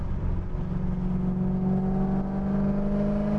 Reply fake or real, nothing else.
real